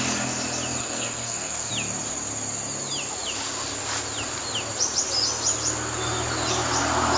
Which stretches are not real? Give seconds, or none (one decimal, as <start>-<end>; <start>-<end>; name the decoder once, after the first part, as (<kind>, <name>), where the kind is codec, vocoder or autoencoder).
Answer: 0.8-1.7 (codec, SNAC)

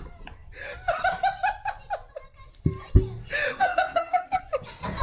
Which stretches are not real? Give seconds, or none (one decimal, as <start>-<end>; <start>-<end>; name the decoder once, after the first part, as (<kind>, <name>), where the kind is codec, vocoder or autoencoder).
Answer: 3.5-4.4 (codec, SNAC)